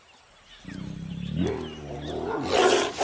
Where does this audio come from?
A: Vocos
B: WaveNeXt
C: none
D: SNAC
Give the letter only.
C